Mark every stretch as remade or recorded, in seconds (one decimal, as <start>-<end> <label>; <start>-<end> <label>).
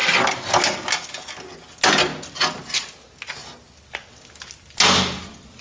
0.0-5.6 recorded